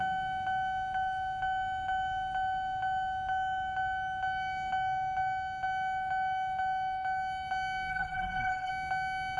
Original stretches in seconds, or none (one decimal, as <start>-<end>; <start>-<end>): 0.0-7.9; 8.7-9.4